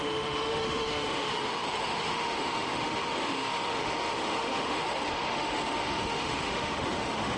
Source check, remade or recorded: remade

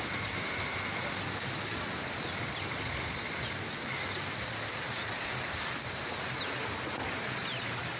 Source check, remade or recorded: recorded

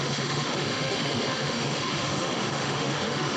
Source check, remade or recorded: remade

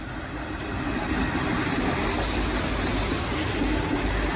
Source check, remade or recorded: recorded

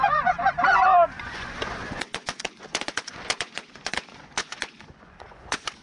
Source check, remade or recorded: remade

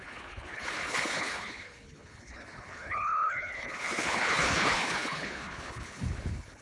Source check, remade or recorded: remade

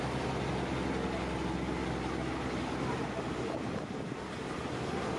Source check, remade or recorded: recorded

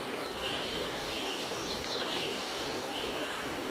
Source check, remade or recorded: remade